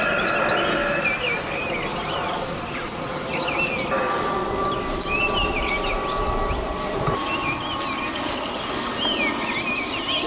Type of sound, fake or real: real